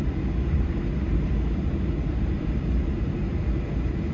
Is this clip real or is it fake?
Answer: fake